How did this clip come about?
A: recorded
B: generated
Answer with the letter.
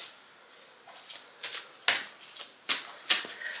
A